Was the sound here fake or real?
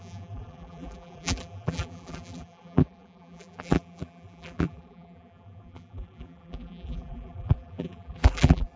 fake